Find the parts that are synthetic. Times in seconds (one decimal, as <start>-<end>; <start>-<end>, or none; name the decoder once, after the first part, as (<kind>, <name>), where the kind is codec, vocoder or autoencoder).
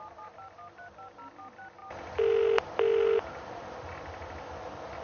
none